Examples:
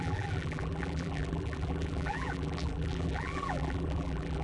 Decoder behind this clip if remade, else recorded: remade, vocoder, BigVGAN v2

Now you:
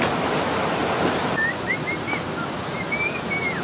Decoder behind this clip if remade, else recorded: recorded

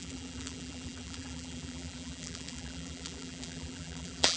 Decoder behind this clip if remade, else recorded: remade, vocoder, BigVGAN v2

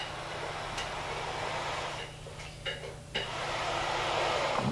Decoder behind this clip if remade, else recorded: recorded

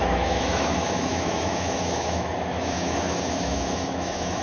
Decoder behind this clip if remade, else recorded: remade, autoencoder, DAC-VAE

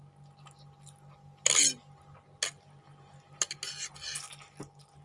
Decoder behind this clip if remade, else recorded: recorded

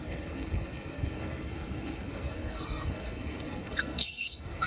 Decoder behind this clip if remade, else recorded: remade, codec, SNAC